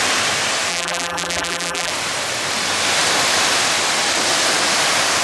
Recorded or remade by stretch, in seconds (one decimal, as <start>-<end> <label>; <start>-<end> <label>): 0.0-0.7 recorded; 0.7-1.9 remade; 1.9-5.2 recorded